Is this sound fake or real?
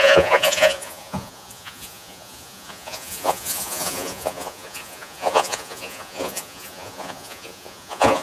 fake